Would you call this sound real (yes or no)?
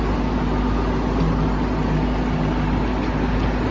yes